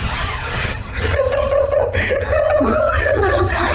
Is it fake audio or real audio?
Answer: fake